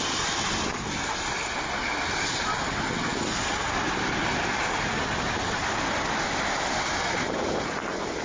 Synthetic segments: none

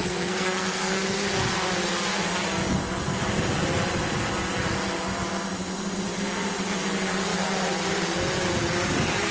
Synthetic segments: 0.0-1.0 (codec, SNAC)

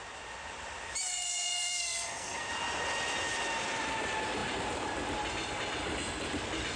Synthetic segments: 1.1-2.5 (codec, SNAC)

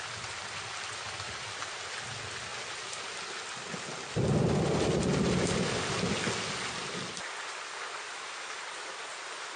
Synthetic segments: none

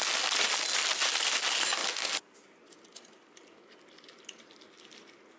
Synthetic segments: none